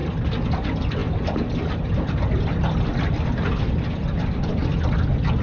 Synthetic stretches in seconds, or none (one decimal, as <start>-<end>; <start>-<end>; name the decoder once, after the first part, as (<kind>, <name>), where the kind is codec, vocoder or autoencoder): 0.6-1.0 (vocoder, BigVGAN v2); 4.2-5.4